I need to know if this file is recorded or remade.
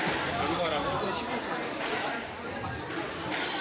recorded